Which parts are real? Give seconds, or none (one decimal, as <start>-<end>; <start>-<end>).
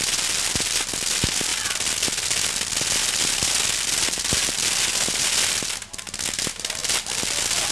0.0-7.7